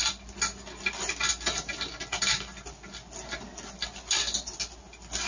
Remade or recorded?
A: recorded